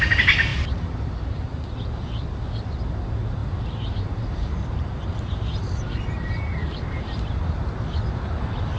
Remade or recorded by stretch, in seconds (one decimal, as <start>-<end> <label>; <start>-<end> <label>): 0.0-0.5 recorded; 0.5-1.4 remade; 1.4-3.4 recorded; 3.4-7.5 remade; 7.5-8.8 recorded